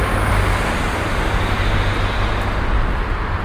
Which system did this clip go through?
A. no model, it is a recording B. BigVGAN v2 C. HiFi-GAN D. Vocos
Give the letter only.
A